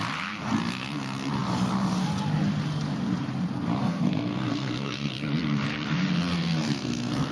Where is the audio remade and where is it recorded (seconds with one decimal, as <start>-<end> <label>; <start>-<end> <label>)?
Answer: 0.0-3.8 recorded; 3.8-5.1 remade; 5.1-6.3 recorded; 6.3-7.3 remade